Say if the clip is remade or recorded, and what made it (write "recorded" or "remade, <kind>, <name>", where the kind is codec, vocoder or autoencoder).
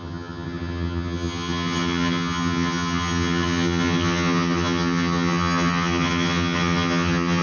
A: remade, vocoder, HiFi-GAN